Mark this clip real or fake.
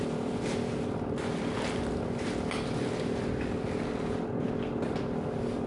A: real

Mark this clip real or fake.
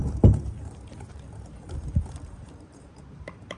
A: fake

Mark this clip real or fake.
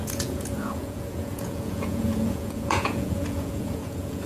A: fake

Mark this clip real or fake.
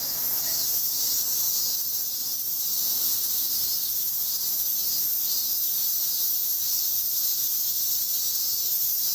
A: fake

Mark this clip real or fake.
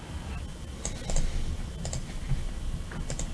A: real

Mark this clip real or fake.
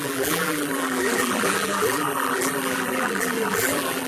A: fake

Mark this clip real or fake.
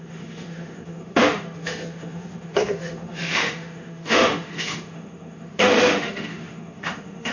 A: fake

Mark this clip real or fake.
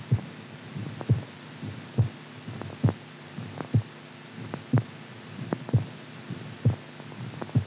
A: real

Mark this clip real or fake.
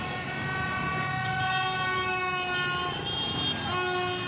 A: real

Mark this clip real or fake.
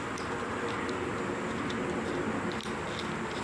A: real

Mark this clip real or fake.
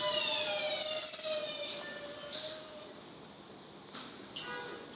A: real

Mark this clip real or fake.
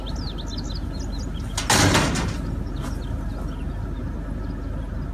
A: real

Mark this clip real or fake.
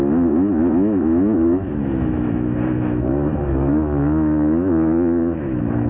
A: fake